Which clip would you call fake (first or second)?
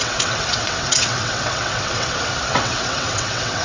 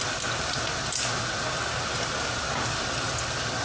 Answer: first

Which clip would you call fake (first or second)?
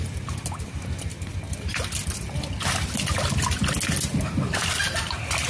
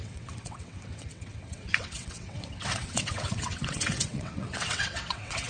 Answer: second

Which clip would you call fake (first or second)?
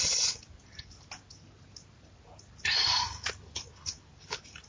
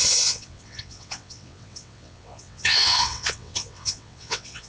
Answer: second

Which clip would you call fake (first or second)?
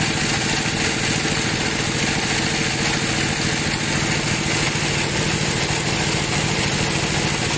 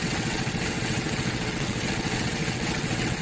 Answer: second